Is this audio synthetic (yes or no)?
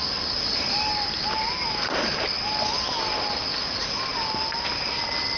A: no